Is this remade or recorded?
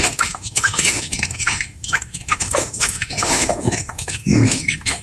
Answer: remade